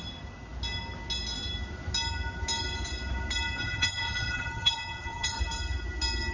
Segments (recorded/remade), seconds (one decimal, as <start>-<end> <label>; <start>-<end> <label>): 0.0-3.6 recorded; 3.6-5.4 remade; 5.4-6.3 recorded